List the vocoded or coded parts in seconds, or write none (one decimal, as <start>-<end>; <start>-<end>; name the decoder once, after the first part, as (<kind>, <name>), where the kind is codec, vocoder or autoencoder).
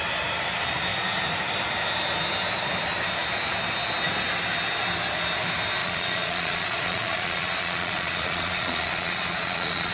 5.8-9.9 (vocoder, Vocos)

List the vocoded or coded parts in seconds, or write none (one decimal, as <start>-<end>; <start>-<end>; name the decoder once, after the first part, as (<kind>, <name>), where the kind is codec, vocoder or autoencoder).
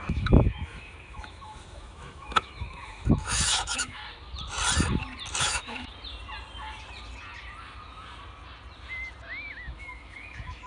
0.0-4.0 (autoencoder, DAC-VAE); 5.4-5.9; 9.5-10.7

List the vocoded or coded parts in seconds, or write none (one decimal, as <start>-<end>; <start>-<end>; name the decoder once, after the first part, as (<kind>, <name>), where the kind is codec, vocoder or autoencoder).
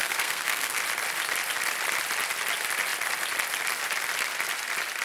0.0-0.8 (codec, SNAC)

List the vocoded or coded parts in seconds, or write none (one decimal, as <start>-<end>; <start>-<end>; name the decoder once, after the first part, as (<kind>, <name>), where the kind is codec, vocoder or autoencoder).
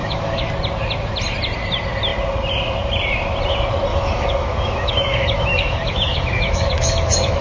0.0-0.5 (autoencoder, DAC-VAE); 3.9-7.4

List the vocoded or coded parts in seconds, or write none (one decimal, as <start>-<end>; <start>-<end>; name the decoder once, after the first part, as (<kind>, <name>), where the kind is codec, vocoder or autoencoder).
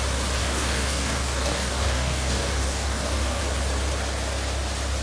0.4-3.4 (codec, DAC)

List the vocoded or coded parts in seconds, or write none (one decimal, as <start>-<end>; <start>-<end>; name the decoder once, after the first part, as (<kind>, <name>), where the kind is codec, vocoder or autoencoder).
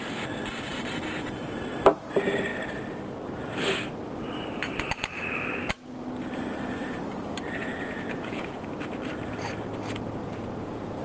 7.6-8.7 (vocoder, Vocos); 10.2-11.0